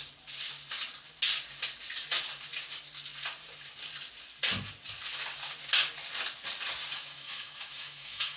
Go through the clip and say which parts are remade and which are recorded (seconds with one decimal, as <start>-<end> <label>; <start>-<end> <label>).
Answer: 0.0-6.9 recorded; 6.9-8.4 remade